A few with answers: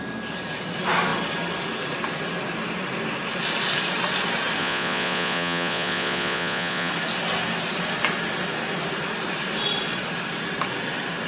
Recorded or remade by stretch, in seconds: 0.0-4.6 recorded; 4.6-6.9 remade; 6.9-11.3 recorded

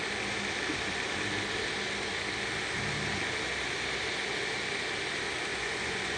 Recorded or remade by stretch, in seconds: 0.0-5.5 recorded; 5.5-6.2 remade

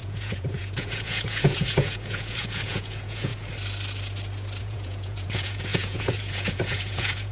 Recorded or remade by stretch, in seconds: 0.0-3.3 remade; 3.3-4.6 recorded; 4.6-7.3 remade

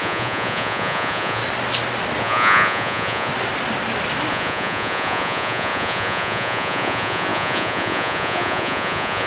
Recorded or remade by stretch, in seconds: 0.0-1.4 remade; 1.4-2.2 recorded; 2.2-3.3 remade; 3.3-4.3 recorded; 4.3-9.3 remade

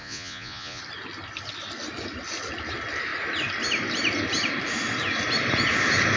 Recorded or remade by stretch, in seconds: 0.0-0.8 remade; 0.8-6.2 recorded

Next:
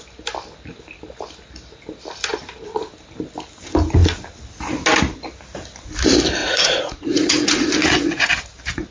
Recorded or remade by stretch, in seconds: 0.0-6.4 recorded; 6.4-8.3 remade; 8.3-8.9 recorded

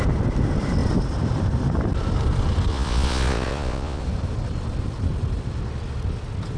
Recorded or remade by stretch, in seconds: 0.0-2.7 recorded; 2.7-4.0 remade; 4.0-6.6 recorded

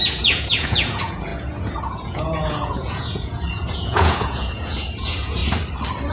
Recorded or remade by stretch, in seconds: 0.0-5.4 remade; 5.4-6.1 recorded